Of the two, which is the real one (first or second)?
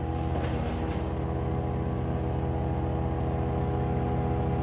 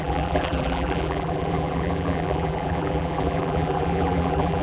first